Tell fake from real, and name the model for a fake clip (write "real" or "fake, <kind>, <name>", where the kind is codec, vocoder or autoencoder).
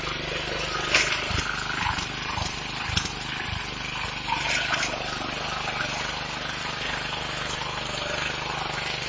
real